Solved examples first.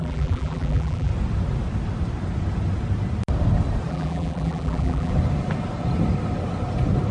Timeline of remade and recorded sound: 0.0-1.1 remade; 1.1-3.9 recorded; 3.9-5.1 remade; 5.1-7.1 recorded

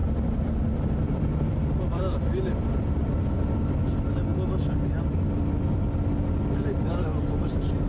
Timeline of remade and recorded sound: 0.0-4.3 remade; 4.3-6.4 recorded; 6.4-7.9 remade